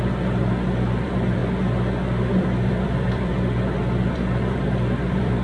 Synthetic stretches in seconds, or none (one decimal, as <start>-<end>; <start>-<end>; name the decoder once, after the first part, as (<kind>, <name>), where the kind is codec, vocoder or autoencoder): 0.0-1.4 (vocoder, BigVGAN v2); 2.4-3.3; 4.1-5.4